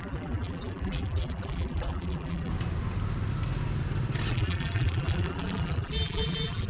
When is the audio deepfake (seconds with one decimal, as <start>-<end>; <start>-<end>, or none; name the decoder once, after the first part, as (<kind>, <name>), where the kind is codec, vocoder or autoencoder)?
0.0-2.5 (vocoder, BigVGAN v2); 4.3-6.7